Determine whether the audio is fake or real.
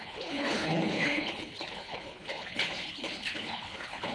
fake